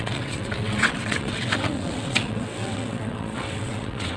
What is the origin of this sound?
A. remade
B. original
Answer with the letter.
A